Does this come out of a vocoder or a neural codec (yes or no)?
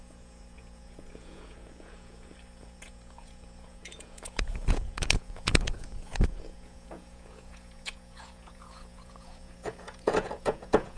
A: yes